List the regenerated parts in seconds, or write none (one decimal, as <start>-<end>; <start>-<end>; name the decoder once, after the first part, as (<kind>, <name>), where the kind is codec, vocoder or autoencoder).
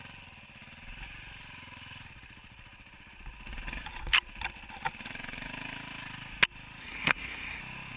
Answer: 6.8-7.6 (codec, SNAC)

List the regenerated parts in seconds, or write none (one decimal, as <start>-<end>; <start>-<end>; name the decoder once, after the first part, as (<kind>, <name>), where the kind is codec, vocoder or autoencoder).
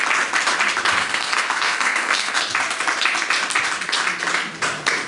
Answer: 1.0-2.4 (codec, SNAC)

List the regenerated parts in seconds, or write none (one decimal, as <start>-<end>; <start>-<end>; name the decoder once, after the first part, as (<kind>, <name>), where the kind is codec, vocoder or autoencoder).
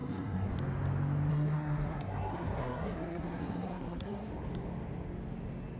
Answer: 0.0-0.5 (codec, SNAC); 1.3-4.3